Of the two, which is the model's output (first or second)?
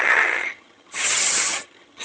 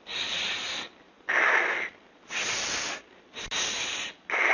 first